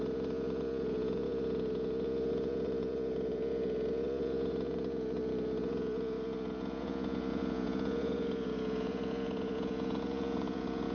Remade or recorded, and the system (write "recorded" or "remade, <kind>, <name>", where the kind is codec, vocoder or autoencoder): remade, vocoder, Vocos